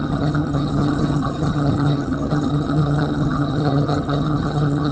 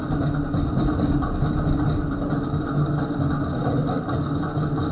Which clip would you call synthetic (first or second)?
first